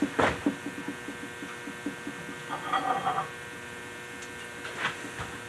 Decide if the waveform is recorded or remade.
recorded